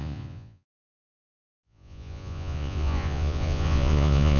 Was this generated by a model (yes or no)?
yes